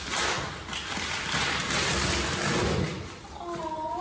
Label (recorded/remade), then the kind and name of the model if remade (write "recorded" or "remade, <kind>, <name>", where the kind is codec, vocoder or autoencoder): recorded